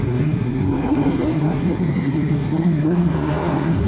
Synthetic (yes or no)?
yes